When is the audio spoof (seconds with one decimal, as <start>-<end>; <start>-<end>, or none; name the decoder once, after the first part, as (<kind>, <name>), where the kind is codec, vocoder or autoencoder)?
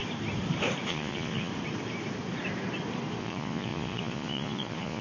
0.9-1.5 (vocoder, Vocos); 3.2-5.0